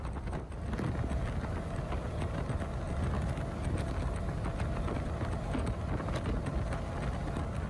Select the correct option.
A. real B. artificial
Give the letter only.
A